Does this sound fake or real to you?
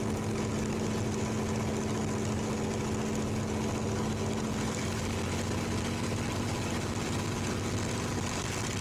real